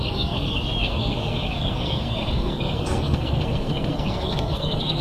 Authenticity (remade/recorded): remade